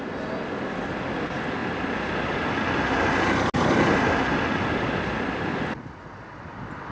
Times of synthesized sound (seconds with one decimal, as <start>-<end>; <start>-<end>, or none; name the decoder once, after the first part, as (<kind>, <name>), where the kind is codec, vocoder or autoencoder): none